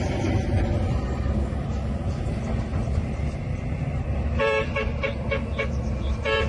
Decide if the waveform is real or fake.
fake